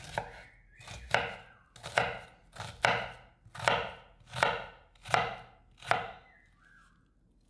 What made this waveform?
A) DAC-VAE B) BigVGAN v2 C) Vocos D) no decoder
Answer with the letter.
D